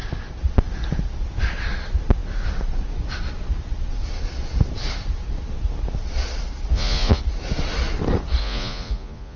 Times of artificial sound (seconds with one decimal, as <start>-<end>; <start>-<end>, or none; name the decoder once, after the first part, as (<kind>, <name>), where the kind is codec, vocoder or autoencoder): 6.7-7.2 (vocoder, Vocos); 8.4-9.4